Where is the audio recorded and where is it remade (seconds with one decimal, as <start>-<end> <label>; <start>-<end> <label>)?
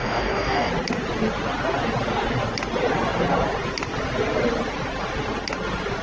0.0-0.7 remade; 0.7-6.0 recorded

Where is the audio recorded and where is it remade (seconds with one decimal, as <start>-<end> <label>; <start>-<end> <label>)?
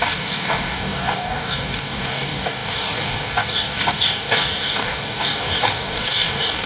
0.0-6.7 remade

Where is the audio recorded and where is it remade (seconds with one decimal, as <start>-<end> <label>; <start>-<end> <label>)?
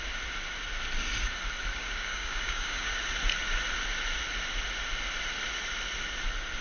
0.0-1.7 recorded; 1.7-2.9 remade; 2.9-6.6 recorded